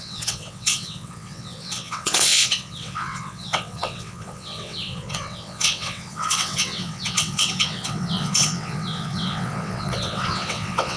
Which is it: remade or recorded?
remade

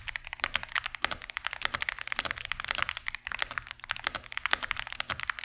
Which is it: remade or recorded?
recorded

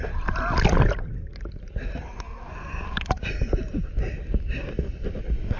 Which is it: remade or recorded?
recorded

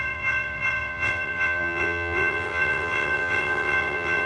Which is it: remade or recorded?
remade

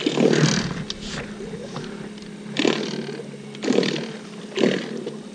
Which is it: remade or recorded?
recorded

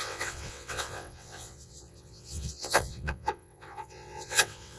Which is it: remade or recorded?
remade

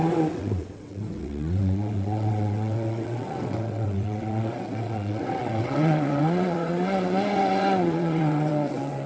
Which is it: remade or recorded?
remade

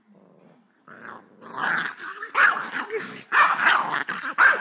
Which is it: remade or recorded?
recorded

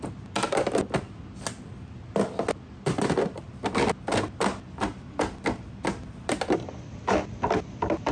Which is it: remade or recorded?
recorded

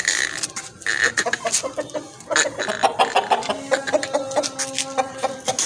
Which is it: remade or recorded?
recorded